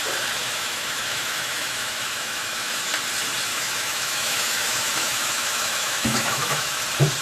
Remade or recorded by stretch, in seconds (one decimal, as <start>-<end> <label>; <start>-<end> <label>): 0.0-0.4 recorded; 0.4-2.9 remade; 2.9-3.5 recorded; 3.5-6.8 remade; 6.8-7.2 recorded